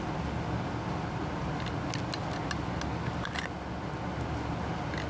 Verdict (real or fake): real